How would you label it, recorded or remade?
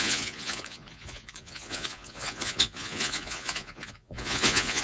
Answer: remade